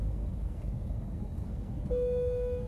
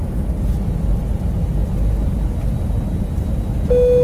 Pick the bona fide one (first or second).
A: second